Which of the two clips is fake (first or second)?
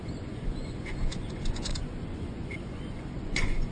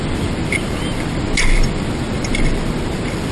first